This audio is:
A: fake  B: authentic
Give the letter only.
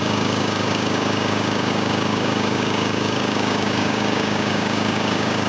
A